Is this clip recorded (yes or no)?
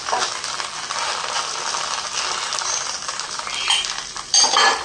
yes